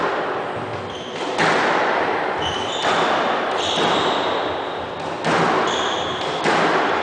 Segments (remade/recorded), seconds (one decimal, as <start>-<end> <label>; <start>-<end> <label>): 0.0-7.0 recorded